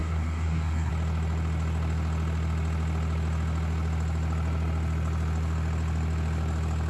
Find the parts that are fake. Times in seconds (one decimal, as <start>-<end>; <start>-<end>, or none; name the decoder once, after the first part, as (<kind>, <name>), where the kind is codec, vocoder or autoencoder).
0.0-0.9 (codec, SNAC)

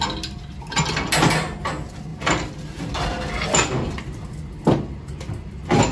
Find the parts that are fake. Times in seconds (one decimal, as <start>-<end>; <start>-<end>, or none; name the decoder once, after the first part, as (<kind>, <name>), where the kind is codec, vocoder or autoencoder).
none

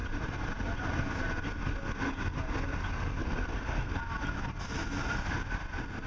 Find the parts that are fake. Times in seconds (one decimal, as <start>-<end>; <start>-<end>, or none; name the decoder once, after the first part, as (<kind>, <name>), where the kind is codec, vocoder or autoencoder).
3.2-3.9 (codec, SNAC)

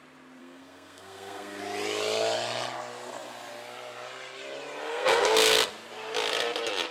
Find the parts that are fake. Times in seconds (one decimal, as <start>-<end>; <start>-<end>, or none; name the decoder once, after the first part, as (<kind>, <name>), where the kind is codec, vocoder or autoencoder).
0.4-1.6 (codec, SNAC); 4.9-5.7

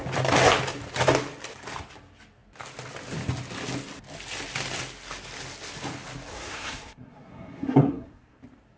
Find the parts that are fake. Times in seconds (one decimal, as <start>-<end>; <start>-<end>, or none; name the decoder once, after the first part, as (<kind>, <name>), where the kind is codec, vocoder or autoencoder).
6.3-8.4 (codec, SNAC)

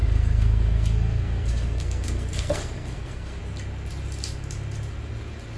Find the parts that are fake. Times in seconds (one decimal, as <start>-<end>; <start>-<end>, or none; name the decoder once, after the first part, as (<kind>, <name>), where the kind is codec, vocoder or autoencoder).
0.0-3.4 (codec, SNAC)

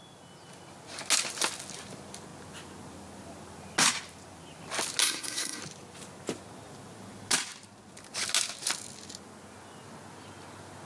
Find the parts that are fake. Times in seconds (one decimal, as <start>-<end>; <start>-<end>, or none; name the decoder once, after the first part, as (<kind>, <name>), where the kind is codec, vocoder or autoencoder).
5.0-5.6 (codec, SNAC)